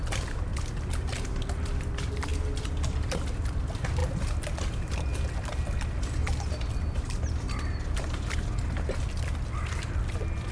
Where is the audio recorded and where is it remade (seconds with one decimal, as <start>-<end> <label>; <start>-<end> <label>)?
0.0-10.5 recorded